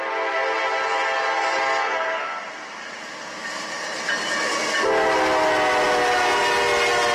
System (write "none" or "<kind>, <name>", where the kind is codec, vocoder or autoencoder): none